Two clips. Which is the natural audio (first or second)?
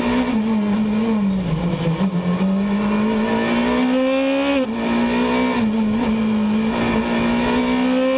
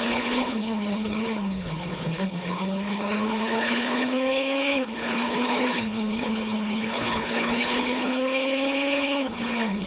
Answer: first